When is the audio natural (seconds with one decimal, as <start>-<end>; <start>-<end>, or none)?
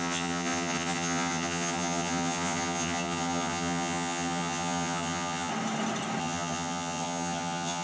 5.5-6.2